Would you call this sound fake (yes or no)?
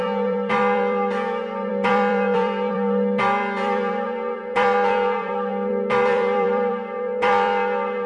yes